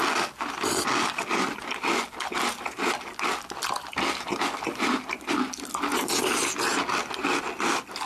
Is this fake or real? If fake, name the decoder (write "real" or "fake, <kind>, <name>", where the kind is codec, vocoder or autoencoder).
real